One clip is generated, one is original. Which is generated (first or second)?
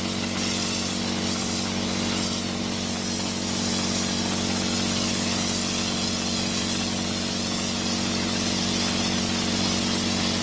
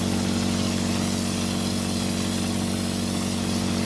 second